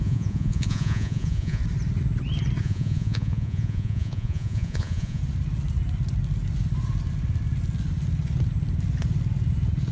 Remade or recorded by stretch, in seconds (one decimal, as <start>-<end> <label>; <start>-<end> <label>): 0.0-1.6 remade; 1.6-2.6 recorded; 2.6-5.2 remade; 5.2-9.9 recorded